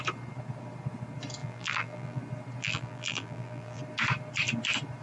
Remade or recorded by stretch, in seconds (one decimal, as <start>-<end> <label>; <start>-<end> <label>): 0.0-1.4 recorded; 1.4-2.2 remade; 2.2-2.6 recorded; 2.6-3.8 remade; 3.8-5.0 recorded

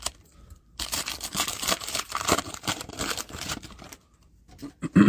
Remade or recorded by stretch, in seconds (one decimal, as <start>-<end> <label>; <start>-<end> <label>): 0.0-1.3 recorded; 1.3-4.4 remade; 4.4-5.1 recorded

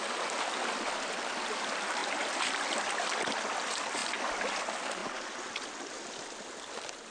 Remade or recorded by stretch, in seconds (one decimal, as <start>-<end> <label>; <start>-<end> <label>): 0.0-4.0 remade; 4.0-4.6 recorded; 4.6-5.0 remade; 5.0-7.1 recorded

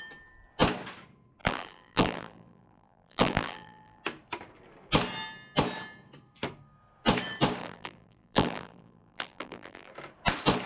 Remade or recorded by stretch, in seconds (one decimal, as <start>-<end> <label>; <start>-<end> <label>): 0.0-1.4 recorded; 1.4-4.0 remade; 4.0-7.6 recorded; 7.6-9.9 remade; 9.9-10.7 recorded

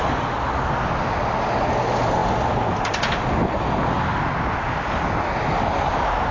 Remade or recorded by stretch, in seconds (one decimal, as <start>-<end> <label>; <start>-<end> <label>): 0.0-6.3 recorded

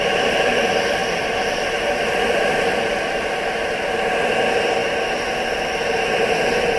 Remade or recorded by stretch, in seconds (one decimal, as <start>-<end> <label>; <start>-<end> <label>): 0.0-1.0 recorded; 1.0-3.7 remade; 3.7-6.8 recorded